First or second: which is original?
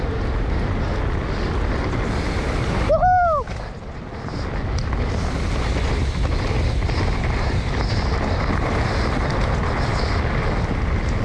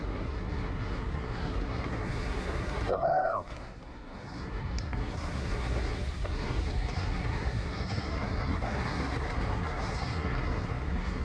first